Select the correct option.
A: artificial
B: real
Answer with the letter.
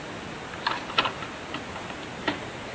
B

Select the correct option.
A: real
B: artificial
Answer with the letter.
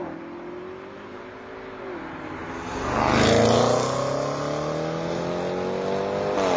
A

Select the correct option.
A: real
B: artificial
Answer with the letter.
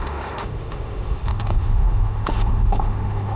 B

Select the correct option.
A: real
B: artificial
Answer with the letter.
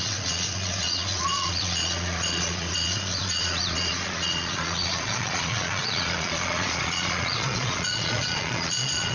B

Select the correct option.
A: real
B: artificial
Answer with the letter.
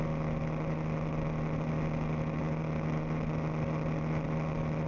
A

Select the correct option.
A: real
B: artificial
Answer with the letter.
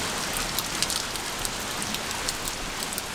A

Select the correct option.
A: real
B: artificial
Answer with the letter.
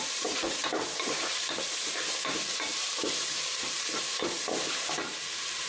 B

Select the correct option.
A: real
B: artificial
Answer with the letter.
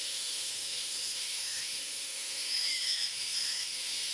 B